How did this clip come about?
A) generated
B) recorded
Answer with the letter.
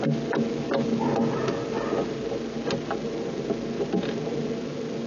B